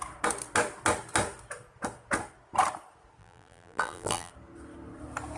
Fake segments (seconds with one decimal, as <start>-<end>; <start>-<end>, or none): 3.2-4.3